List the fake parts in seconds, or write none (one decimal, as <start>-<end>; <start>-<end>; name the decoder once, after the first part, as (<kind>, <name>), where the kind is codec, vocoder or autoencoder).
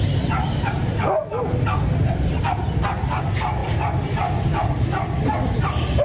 none